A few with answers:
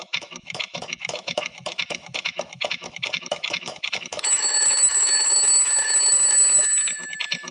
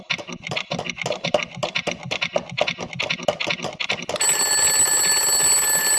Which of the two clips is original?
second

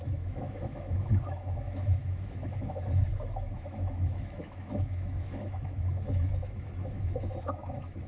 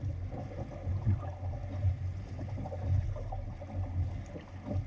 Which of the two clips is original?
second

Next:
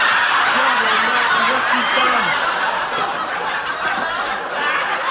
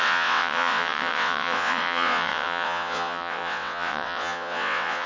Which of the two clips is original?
first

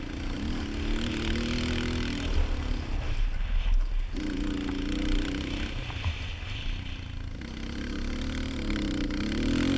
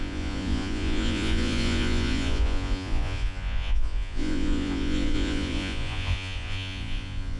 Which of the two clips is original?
first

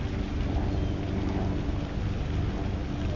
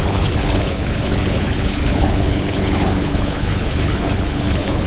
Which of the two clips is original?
first